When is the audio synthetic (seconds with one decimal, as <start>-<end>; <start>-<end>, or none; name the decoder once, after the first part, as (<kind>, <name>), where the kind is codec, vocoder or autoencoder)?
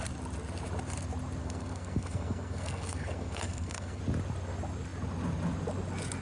1.4-4.0 (codec, SNAC)